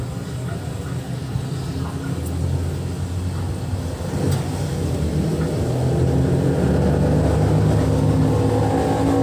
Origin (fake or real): real